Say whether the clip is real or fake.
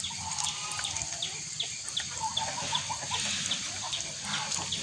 real